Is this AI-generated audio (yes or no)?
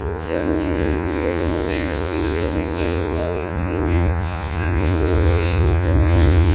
yes